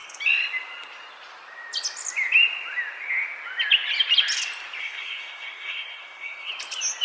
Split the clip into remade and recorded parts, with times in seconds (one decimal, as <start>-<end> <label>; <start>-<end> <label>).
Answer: 0.0-4.8 recorded; 4.8-6.5 remade; 6.5-7.0 recorded